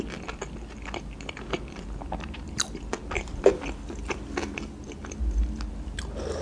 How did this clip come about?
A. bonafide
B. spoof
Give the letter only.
A